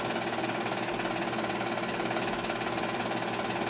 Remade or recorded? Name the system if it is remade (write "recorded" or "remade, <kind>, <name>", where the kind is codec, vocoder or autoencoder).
recorded